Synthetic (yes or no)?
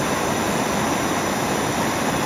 no